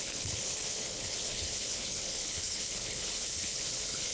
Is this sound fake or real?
fake